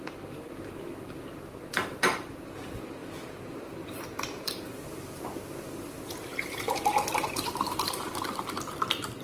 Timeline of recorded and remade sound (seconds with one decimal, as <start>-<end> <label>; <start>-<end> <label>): 0.0-1.9 recorded; 1.9-2.4 remade; 2.4-3.0 recorded; 3.0-5.2 remade; 5.2-6.3 recorded; 6.3-8.6 remade; 8.6-9.2 recorded

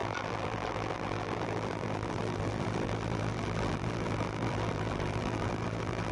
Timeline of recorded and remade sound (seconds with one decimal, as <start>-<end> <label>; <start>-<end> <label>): 0.0-6.1 remade

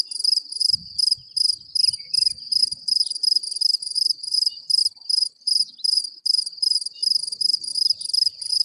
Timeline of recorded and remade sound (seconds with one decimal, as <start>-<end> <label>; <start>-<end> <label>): 0.0-0.8 remade; 0.8-2.6 recorded; 2.6-4.8 remade; 4.8-5.3 recorded; 5.3-7.0 remade; 7.0-7.7 recorded; 7.7-8.6 remade

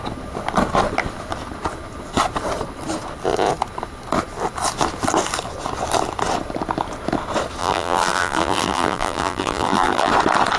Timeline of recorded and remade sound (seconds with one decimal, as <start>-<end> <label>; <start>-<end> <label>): 0.0-7.6 recorded; 7.6-10.1 remade; 10.1-10.6 recorded

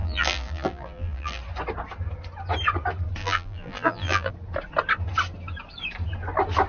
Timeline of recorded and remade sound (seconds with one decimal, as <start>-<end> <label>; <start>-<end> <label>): 0.0-1.4 remade; 1.4-3.2 recorded; 3.2-4.3 remade; 4.3-6.7 recorded

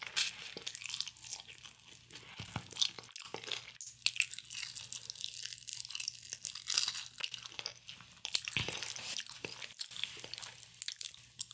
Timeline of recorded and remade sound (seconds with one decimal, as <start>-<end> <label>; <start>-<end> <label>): 0.0-11.5 recorded

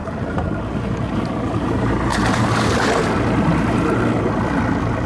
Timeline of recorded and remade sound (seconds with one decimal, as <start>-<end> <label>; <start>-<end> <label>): 0.0-2.1 remade; 2.1-5.1 recorded